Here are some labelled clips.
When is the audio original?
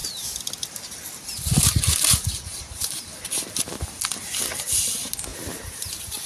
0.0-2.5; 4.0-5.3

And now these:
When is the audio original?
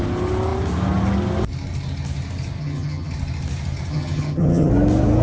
0.0-2.6; 3.1-3.9; 4.7-5.2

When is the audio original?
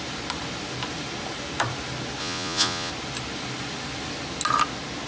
0.0-2.2; 2.9-5.1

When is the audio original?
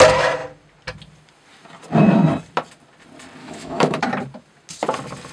0.0-3.4; 4.0-5.3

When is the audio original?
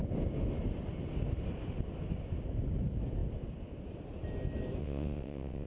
0.0-4.8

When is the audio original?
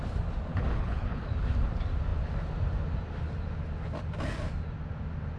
0.0-0.5; 1.3-5.4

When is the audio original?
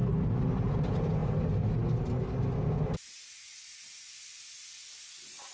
0.0-5.5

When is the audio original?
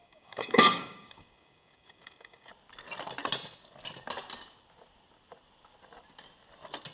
2.5-6.9